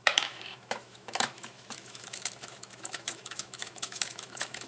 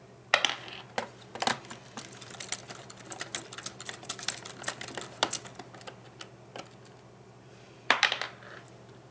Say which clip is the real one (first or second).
second